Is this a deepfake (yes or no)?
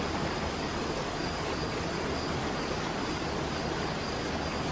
no